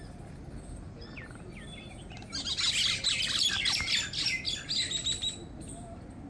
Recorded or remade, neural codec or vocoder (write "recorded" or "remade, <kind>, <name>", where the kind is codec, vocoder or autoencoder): recorded